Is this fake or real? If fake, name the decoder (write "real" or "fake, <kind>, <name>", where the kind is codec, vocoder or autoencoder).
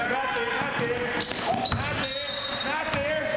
real